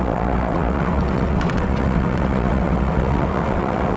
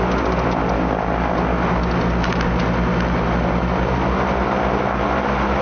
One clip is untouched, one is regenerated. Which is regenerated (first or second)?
first